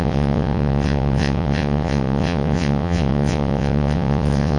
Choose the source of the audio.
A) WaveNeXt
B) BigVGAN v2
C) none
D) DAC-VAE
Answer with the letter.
A